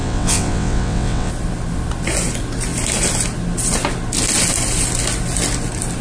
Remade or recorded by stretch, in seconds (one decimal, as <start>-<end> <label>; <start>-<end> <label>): 0.0-1.3 remade; 1.3-6.0 recorded